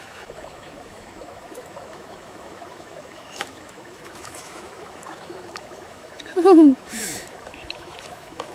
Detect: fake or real fake